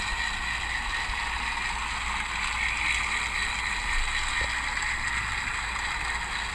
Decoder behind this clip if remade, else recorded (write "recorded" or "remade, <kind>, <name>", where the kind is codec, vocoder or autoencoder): recorded